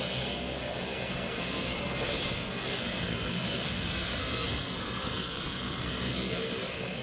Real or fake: fake